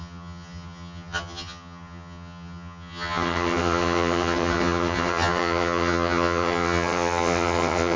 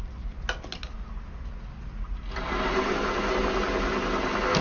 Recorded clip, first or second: second